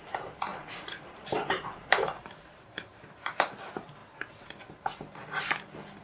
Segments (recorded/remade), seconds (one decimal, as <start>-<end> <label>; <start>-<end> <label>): 0.0-0.5 recorded; 0.5-3.5 remade; 3.5-6.0 recorded